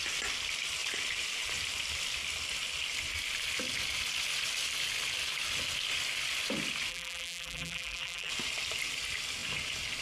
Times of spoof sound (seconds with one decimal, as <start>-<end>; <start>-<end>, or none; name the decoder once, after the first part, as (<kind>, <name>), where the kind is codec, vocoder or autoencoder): 6.9-8.3 (vocoder, BigVGAN v2)